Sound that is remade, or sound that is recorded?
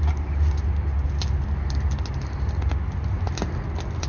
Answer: recorded